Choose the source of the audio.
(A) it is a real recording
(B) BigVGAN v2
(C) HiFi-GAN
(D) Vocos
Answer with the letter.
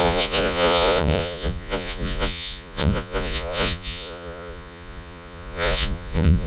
D